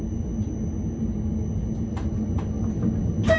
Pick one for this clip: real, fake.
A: real